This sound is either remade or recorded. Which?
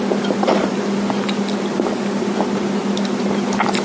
recorded